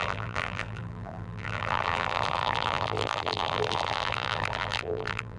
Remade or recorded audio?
remade